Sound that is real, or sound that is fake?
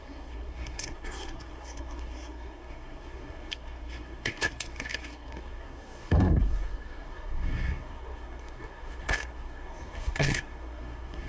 fake